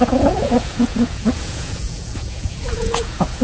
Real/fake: fake